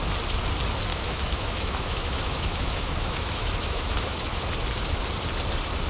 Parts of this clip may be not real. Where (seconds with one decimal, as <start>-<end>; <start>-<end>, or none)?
0.9-4.4